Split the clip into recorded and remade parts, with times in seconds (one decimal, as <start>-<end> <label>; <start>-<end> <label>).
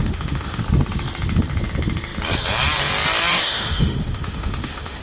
0.0-0.6 remade; 0.6-3.3 recorded; 3.3-5.0 remade